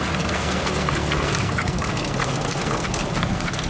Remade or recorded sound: remade